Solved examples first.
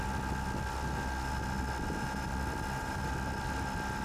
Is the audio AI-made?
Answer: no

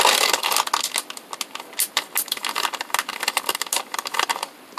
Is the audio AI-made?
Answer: no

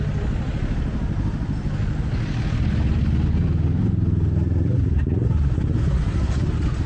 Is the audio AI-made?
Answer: no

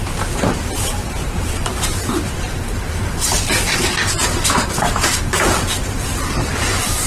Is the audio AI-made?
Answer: yes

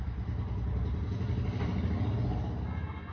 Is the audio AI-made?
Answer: no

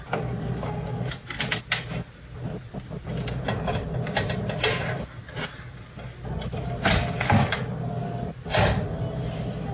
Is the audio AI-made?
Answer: no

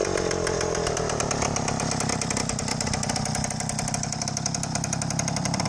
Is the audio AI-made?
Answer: yes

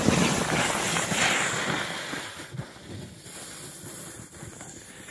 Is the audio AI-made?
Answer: no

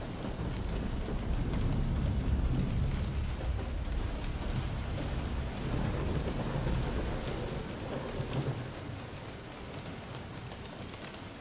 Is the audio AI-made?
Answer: no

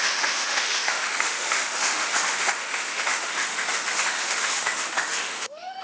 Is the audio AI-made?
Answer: yes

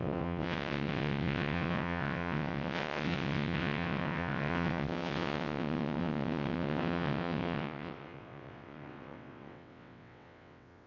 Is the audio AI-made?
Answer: yes